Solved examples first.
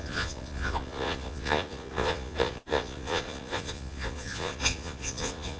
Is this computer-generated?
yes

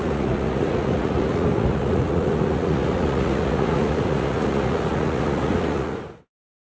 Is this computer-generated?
yes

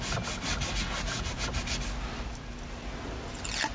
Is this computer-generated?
no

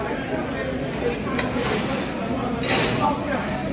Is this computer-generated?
no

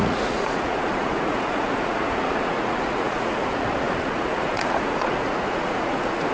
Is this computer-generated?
yes